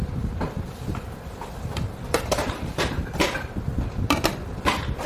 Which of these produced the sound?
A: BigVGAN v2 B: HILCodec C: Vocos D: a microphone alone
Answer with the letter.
A